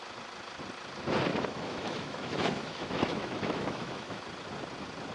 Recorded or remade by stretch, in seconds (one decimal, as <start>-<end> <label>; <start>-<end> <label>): 0.0-1.3 recorded; 1.3-4.2 remade; 4.2-5.1 recorded